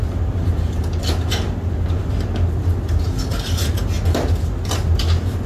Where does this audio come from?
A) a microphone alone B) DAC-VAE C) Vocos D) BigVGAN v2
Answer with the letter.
A